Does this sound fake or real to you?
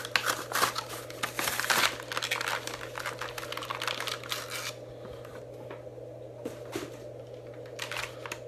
real